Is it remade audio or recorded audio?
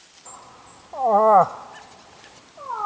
recorded